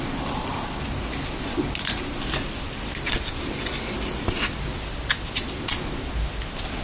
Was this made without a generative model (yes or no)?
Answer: yes